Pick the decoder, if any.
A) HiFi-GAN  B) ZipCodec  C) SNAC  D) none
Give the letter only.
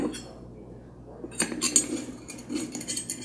D